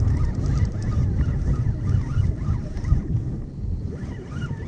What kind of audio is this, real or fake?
real